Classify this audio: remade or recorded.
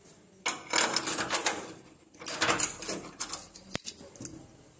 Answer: recorded